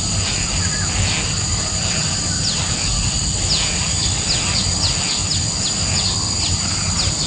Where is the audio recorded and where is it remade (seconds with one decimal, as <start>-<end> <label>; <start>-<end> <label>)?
0.0-7.3 recorded